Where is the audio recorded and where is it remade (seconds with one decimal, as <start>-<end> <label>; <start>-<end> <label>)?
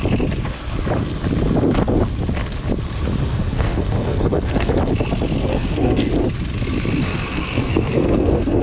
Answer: 0.0-3.3 recorded; 3.3-4.7 remade; 4.7-5.4 recorded; 5.4-6.1 remade; 6.1-7.1 recorded; 7.1-8.6 remade